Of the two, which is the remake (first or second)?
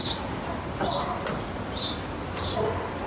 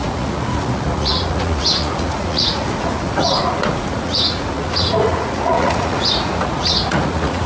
second